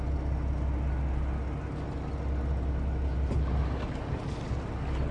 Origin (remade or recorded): recorded